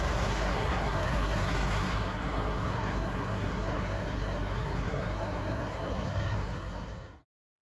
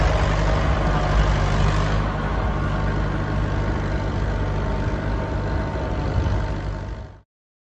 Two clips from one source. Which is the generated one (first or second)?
first